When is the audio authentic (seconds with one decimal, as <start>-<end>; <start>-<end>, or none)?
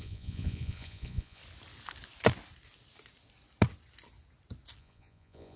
1.4-4.8